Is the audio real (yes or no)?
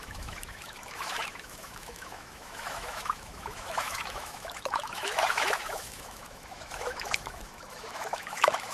no